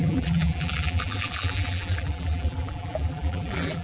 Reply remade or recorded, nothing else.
remade